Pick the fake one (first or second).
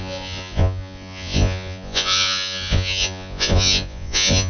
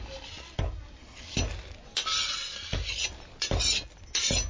first